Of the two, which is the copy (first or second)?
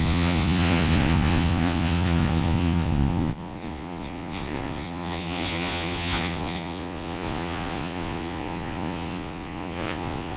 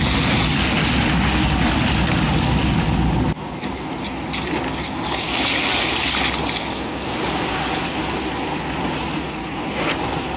first